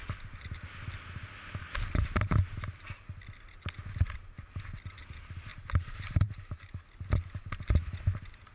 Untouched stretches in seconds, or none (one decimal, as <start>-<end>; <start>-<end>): 0.0-5.5; 6.7-8.5